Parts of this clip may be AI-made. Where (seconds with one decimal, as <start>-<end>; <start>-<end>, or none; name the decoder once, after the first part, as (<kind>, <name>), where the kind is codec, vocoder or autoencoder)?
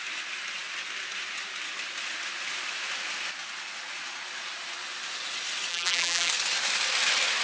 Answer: 5.7-6.3 (vocoder, BigVGAN v2)